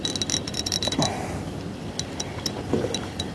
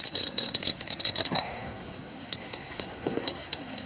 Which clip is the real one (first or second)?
first